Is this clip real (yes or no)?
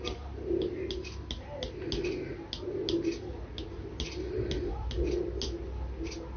yes